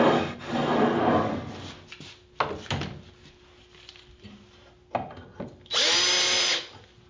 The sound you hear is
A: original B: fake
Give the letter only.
A